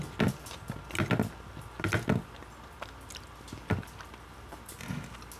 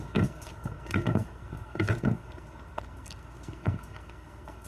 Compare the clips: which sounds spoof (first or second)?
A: second